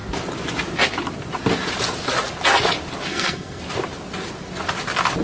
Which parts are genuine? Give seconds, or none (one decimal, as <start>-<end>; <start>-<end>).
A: 0.0-3.1; 3.6-5.2